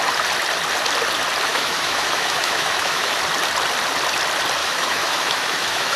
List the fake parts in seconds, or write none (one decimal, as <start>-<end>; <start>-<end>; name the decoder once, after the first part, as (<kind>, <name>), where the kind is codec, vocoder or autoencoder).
1.5-3.2 (autoencoder, DAC-VAE); 4.6-6.0